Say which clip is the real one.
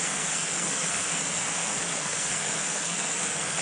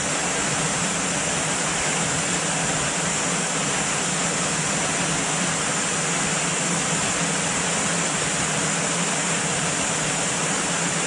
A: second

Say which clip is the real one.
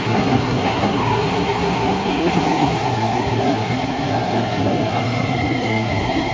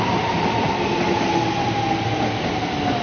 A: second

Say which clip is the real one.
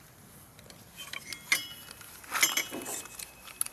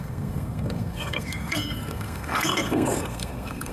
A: first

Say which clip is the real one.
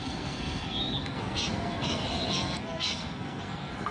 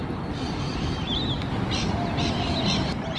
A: second